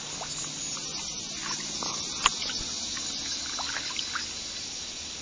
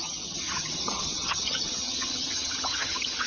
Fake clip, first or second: second